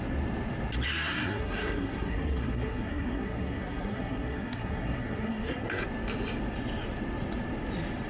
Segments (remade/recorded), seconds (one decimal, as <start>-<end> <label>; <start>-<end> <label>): 0.0-0.9 recorded; 0.9-5.8 remade; 5.8-8.1 recorded